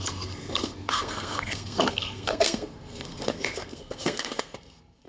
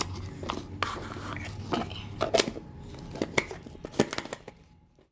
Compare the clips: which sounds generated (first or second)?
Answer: first